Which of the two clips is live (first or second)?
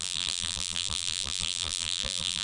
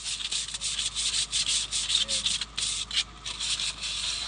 second